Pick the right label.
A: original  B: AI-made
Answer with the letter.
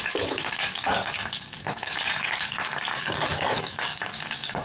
B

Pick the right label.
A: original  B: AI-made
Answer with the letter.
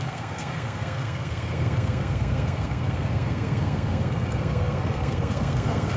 B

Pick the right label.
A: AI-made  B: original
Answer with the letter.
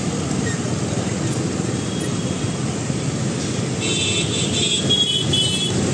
B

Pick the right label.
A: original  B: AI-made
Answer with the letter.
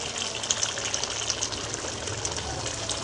A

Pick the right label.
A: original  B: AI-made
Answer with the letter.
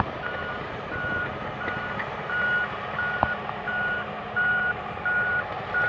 B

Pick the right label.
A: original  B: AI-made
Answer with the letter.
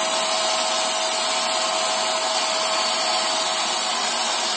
A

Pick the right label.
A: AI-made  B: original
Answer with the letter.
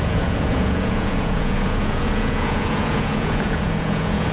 A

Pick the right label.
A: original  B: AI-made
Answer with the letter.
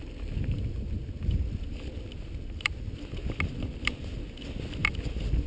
A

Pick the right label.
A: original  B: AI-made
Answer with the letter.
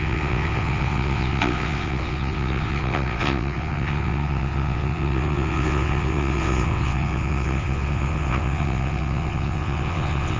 B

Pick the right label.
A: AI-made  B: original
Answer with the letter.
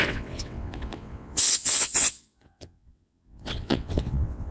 A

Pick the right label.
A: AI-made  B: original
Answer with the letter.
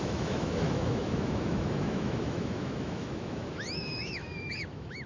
A